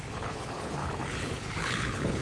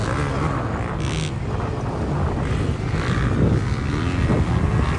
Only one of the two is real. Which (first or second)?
second